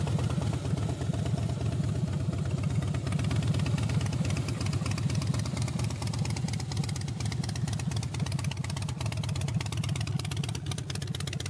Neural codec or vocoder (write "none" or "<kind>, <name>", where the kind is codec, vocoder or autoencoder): none